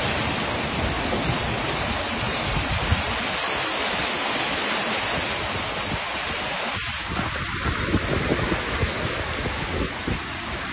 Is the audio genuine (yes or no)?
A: yes